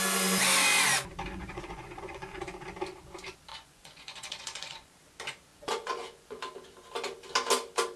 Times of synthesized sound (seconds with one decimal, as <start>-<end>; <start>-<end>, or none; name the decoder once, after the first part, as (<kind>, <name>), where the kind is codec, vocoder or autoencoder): 1.3-2.4 (vocoder, Vocos); 3.5-4.9; 5.5-6.4